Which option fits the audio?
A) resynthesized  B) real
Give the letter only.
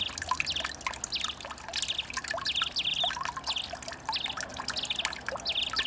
B